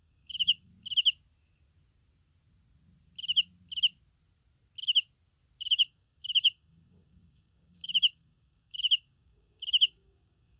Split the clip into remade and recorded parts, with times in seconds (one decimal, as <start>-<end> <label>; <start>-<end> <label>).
0.0-0.7 remade; 0.7-5.6 recorded; 5.6-10.6 remade